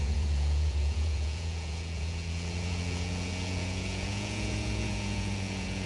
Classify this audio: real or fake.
fake